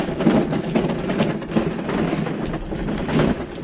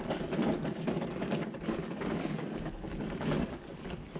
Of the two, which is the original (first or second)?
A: first